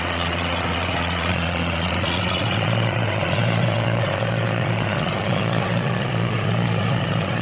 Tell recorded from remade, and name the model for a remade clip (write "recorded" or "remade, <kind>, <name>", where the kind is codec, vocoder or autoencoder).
remade, vocoder, Vocos